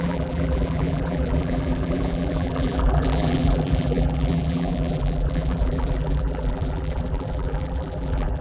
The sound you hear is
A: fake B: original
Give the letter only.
A